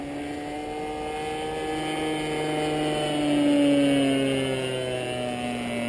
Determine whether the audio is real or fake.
real